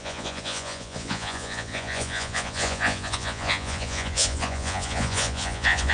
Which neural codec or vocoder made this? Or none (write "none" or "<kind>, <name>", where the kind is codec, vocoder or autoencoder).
vocoder, Vocos